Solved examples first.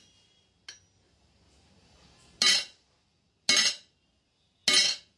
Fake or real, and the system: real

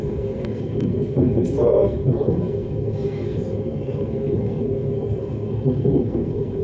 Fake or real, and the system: fake, codec, SNAC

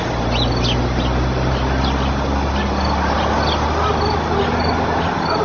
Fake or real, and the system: real